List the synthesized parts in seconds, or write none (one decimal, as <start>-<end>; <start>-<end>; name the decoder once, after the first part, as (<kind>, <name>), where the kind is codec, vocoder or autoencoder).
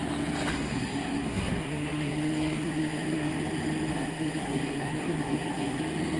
0.5-3.3 (codec, SNAC); 3.9-5.8